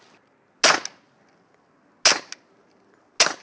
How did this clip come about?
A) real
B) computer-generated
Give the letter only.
A